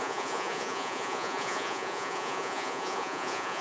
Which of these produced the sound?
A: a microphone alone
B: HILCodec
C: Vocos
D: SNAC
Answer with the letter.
C